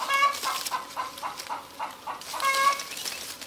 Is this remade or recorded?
recorded